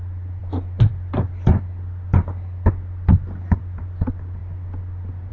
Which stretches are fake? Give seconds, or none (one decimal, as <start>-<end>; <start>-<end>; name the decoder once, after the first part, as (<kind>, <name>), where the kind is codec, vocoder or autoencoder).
none